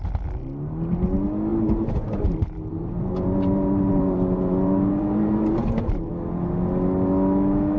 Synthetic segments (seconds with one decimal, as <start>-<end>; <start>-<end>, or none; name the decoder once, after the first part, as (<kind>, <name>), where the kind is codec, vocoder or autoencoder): 1.5-6.1 (vocoder, BigVGAN v2)